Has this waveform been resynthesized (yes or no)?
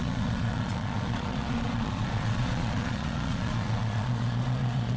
yes